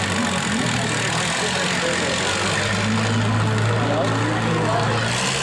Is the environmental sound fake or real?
real